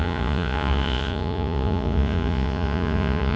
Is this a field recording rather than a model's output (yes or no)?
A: no